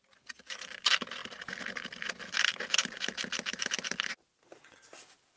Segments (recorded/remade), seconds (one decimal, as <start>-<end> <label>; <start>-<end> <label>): 0.0-5.4 recorded